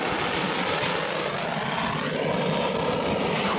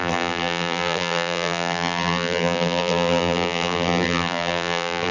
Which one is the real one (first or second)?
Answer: first